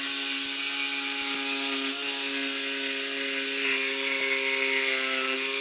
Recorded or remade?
recorded